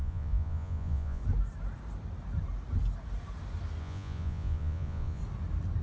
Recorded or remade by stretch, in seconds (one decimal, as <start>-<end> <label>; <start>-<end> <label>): 0.0-1.2 remade; 1.2-3.8 recorded; 3.8-5.2 remade; 5.2-5.8 recorded